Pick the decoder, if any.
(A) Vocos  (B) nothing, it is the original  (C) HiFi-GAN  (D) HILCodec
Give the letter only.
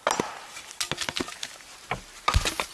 B